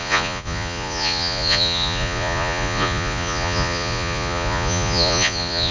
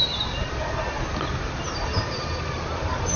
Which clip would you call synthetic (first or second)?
first